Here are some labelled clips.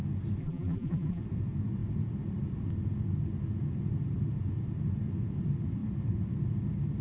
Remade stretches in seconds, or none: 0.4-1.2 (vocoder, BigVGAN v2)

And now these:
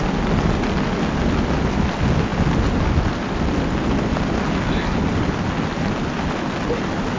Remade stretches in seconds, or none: none

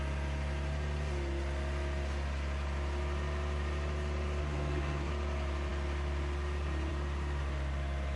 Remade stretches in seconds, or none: 4.4-5.1 (codec, SNAC)

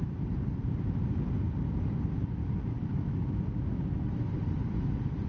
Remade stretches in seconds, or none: 2.4-4.3 (autoencoder, DAC-VAE)

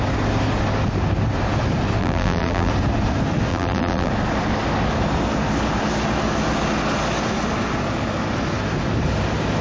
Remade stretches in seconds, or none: 2.0-2.7 (vocoder, BigVGAN v2); 3.5-4.1

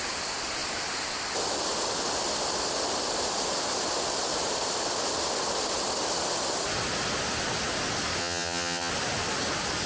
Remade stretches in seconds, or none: 8.2-8.9 (vocoder, HiFi-GAN)

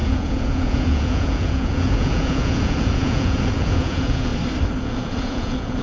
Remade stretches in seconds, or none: 0.0-4.3 (vocoder, Vocos); 4.8-5.8

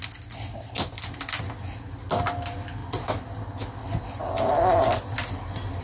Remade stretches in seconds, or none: none